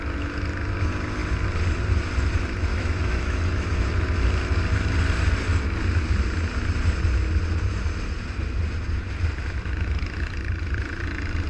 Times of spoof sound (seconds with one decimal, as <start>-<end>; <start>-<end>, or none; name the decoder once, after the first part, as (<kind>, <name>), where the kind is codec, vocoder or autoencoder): 2.7-3.9 (autoencoder, DAC-VAE)

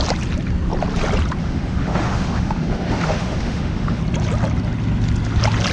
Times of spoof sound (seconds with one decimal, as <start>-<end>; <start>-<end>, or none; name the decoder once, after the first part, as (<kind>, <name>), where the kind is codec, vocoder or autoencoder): 1.4-4.0 (autoencoder, DAC-VAE)

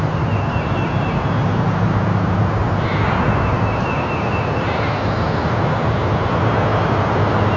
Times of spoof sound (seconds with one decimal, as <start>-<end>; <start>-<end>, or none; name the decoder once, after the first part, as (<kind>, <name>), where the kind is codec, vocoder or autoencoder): none

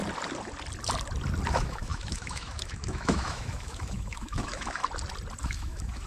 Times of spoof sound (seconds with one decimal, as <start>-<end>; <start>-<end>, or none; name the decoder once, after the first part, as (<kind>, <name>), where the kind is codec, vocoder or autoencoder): 1.5-4.8 (autoencoder, DAC-VAE); 5.4-6.1

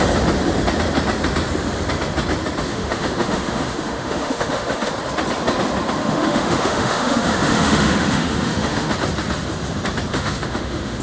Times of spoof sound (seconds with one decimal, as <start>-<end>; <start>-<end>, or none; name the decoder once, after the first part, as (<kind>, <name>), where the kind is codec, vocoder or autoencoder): 2.7-4.9 (autoencoder, DAC-VAE); 6.0-8.9; 10.1-11.0

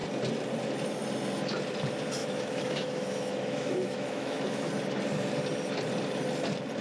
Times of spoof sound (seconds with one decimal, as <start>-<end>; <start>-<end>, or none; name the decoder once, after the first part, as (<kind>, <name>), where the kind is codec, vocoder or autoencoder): 2.2-4.7 (autoencoder, DAC-VAE)

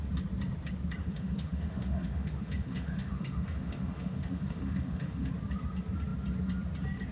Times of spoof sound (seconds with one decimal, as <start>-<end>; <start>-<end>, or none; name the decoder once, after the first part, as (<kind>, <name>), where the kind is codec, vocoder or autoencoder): 1.0-5.3 (autoencoder, DAC-VAE)